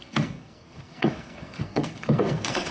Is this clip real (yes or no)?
no